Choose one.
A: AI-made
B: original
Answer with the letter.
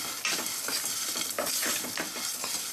B